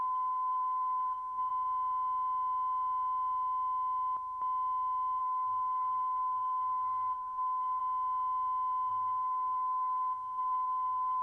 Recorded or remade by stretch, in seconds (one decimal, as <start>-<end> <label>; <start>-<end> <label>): 0.0-1.5 remade; 1.5-5.2 recorded; 5.2-7.8 remade; 7.8-8.9 recorded; 8.9-11.2 remade